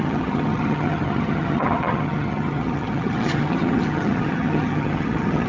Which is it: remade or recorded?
remade